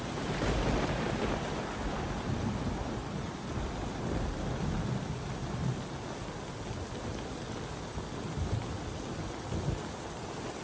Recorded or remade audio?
recorded